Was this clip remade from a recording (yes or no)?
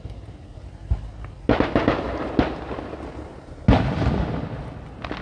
no